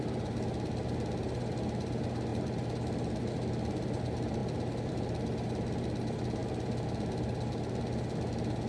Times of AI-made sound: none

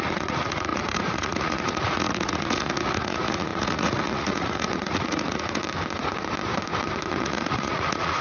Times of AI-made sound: 0.0-5.6; 7.2-8.2

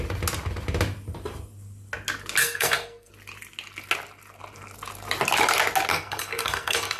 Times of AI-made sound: 2.4-3.1; 5.9-7.0

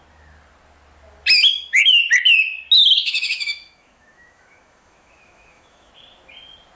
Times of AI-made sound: 1.5-2.0; 2.8-5.9

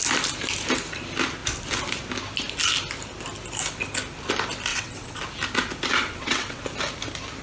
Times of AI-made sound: 4.7-5.2; 6.0-6.6

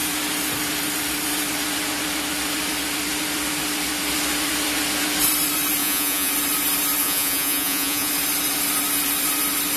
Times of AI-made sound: 5.8-6.3; 7.0-8.1

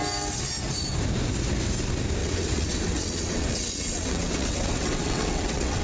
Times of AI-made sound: 2.2-5.8